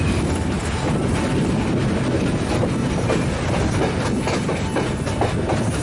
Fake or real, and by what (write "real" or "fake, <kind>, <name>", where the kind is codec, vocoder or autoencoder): real